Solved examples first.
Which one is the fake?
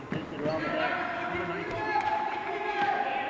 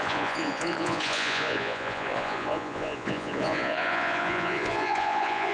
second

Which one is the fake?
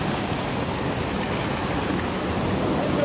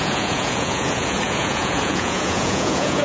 second